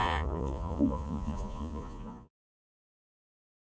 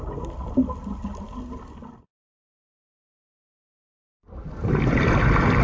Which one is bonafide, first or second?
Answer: second